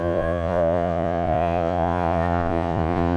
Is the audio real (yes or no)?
no